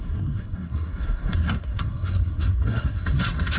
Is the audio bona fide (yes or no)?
no